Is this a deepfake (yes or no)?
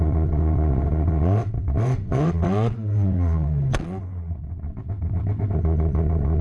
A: yes